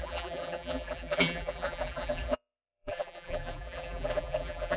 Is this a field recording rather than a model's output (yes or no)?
no